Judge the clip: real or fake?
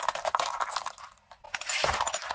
real